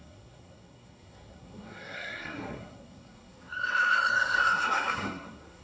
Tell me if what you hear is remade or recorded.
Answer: remade